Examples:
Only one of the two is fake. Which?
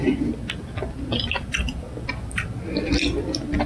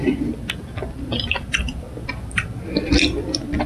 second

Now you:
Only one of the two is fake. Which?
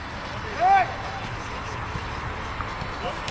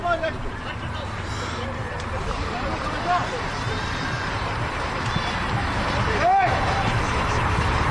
second